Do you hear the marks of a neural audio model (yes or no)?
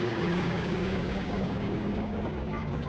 yes